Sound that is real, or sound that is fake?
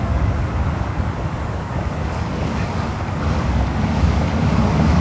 fake